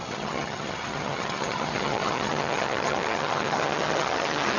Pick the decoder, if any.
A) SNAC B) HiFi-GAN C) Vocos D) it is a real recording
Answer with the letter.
B